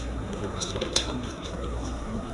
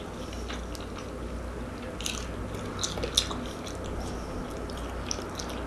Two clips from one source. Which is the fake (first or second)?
first